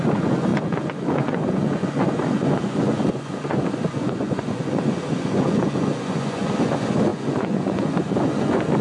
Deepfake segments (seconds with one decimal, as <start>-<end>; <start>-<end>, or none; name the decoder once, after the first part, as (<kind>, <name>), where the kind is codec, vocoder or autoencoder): 0.0-8.8 (vocoder, Vocos)